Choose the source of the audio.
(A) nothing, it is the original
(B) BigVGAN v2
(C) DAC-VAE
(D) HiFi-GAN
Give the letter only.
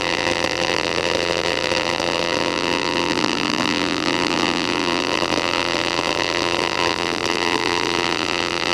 B